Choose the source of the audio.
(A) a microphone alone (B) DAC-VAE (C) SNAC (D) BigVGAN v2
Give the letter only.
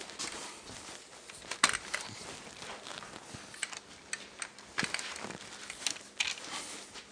A